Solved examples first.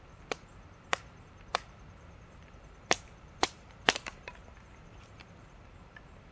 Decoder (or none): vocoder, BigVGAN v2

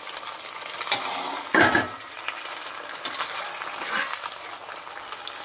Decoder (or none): vocoder, BigVGAN v2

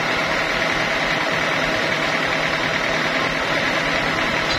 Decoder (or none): none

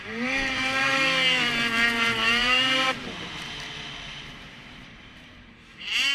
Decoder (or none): vocoder, BigVGAN v2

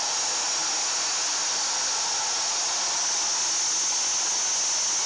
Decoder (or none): none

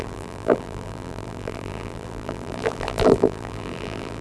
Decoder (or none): vocoder, BigVGAN v2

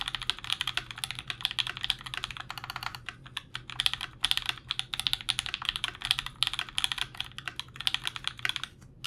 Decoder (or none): none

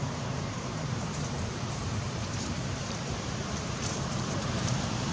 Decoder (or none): vocoder, BigVGAN v2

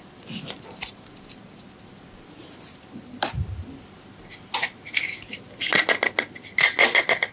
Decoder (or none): none